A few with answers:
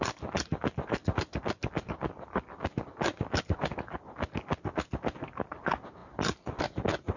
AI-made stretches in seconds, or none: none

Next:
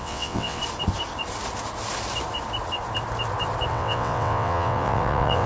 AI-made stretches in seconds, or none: 0.0-0.6 (vocoder, WaveNeXt); 3.7-5.5

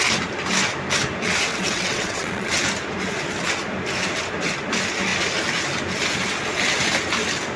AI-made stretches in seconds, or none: 1.5-2.5 (vocoder, WaveNeXt)